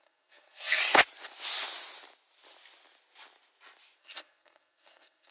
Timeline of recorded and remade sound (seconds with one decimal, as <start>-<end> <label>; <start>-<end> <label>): 0.0-0.8 remade; 0.8-4.0 recorded; 4.0-5.3 remade